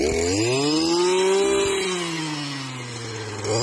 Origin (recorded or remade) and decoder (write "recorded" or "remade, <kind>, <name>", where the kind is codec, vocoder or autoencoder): recorded